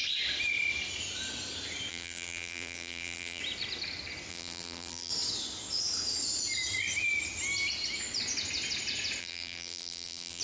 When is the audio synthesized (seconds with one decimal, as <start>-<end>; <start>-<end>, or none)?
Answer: 1.9-3.4; 4.3-5.1; 9.2-10.4